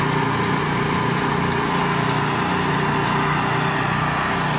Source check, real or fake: real